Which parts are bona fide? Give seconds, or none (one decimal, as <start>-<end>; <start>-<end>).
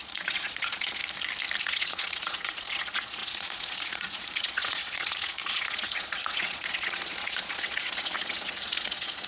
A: 1.0-1.6